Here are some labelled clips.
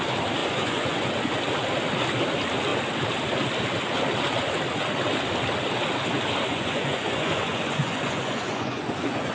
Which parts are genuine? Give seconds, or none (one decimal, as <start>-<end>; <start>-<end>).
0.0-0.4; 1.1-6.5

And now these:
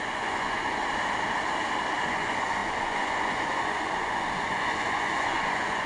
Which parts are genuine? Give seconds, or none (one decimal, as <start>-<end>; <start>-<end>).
0.8-2.0

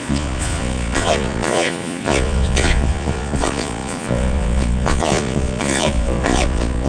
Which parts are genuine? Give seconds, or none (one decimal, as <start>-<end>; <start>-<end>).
none